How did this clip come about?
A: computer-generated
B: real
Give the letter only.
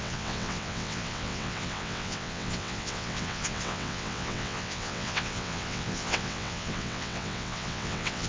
A